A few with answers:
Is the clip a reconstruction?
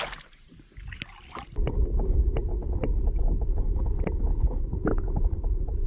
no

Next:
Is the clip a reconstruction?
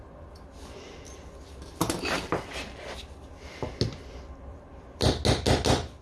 no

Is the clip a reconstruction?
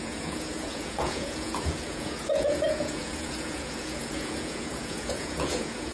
yes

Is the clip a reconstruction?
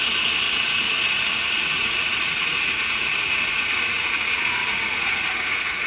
yes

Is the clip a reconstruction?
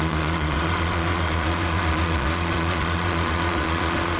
yes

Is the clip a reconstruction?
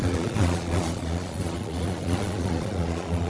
yes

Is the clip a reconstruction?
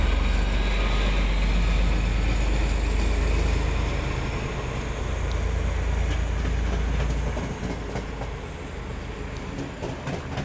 no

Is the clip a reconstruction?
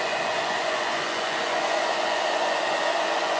yes